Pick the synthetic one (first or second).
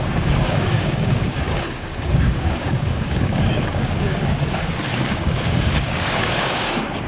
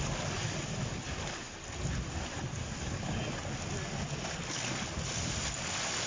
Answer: first